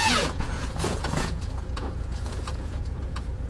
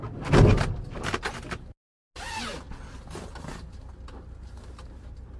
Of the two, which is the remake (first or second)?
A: first